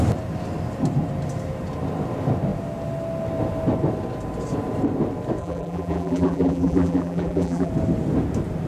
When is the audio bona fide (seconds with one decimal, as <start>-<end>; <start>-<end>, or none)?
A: 0.0-5.4; 7.7-8.7